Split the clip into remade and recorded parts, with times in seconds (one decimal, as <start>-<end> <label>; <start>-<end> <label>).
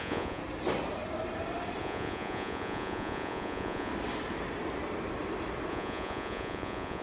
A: 0.0-0.4 remade; 0.4-1.8 recorded; 1.8-3.9 remade; 3.9-5.7 recorded; 5.7-7.0 remade